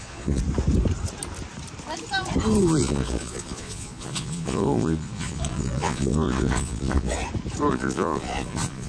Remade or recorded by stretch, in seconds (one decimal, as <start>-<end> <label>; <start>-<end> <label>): 0.0-0.4 remade; 0.4-2.6 recorded; 2.6-7.2 remade; 7.2-7.7 recorded; 7.7-8.9 remade